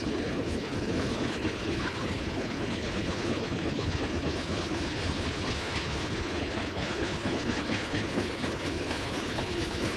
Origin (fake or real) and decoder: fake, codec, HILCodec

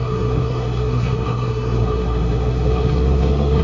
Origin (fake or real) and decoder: fake, codec, SNAC